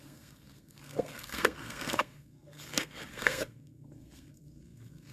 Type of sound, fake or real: fake